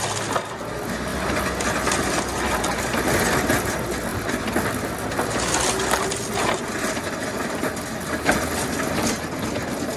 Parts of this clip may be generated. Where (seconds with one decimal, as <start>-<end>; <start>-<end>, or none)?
none

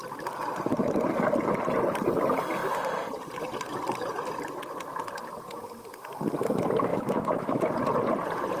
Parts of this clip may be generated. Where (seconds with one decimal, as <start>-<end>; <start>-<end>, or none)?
6.9-7.7

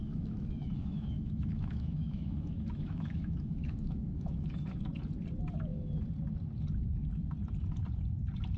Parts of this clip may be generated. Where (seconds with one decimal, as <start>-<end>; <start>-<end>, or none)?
0.0-4.9

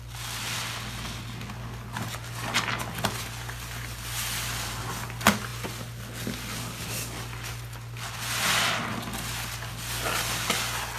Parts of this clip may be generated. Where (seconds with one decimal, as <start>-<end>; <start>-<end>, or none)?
none